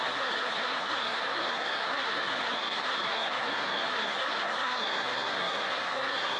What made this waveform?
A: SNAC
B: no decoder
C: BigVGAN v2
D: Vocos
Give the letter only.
A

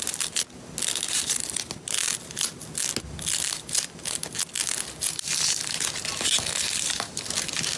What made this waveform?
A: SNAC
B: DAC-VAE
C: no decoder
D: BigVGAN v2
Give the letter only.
C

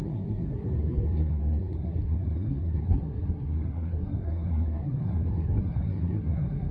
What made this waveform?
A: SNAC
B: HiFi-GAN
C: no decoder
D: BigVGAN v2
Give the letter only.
A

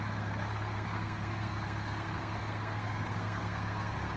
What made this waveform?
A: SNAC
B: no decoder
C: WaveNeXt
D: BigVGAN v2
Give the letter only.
A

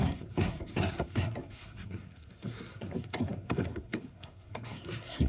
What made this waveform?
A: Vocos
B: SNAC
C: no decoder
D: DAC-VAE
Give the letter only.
B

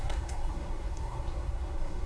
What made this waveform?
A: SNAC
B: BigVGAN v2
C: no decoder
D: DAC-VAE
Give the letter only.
A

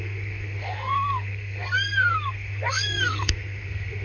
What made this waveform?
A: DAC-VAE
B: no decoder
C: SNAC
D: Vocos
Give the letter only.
C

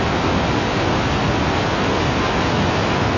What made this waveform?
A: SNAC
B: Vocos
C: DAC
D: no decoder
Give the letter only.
D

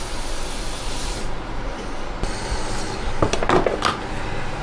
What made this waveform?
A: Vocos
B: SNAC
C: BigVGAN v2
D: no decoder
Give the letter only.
D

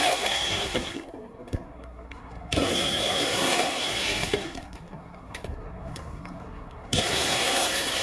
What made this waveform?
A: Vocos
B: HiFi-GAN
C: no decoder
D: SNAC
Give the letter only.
D